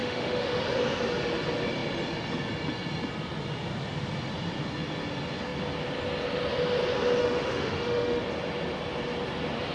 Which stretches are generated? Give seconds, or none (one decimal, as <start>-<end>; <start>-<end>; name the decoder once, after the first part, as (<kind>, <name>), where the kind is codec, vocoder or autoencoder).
0.0-0.6 (autoencoder, DAC-VAE); 7.2-8.2